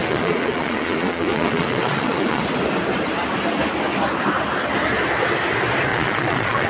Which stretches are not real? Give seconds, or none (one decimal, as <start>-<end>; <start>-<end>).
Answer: 0.0-2.4; 5.9-6.7